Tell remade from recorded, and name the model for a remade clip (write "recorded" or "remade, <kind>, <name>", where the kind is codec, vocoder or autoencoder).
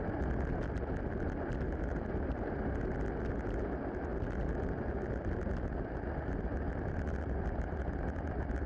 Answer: recorded